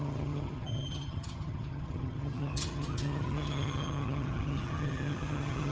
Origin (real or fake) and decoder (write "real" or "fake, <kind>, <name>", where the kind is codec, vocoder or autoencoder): fake, vocoder, HiFi-GAN